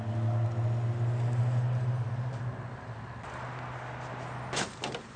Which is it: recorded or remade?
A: recorded